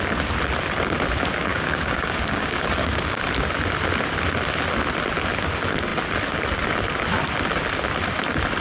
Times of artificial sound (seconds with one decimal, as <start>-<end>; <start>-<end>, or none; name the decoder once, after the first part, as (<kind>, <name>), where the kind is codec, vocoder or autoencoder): 1.5-3.2 (codec, DAC)